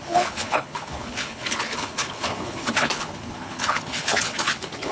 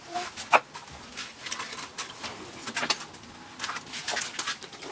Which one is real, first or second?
second